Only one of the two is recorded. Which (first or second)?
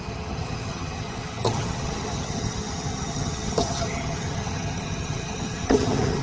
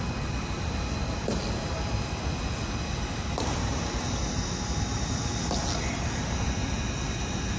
second